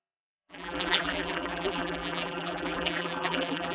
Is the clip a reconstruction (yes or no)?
yes